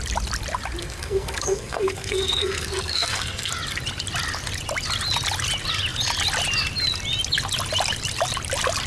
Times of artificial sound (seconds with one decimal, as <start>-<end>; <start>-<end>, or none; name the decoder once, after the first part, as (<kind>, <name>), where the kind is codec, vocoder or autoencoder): 0.8-3.5 (codec, SNAC)